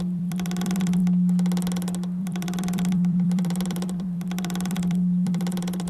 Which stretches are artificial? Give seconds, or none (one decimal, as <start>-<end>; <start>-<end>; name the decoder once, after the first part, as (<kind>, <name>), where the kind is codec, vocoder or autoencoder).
0.0-1.0 (vocoder, BigVGAN v2); 2.2-5.9